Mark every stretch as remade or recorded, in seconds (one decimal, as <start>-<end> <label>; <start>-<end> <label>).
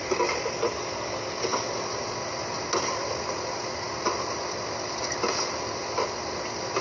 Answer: 0.0-6.8 recorded